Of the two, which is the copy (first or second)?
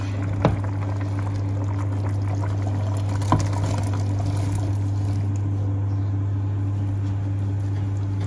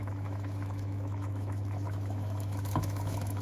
second